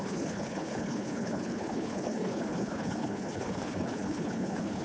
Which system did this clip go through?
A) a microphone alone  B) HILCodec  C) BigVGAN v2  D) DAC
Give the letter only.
B